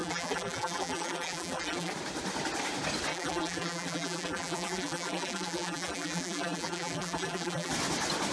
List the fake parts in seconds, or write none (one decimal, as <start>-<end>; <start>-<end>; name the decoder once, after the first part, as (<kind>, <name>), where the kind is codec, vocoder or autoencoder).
0.0-1.9 (vocoder, BigVGAN v2); 3.1-7.7